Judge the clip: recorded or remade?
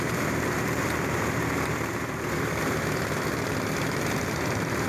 remade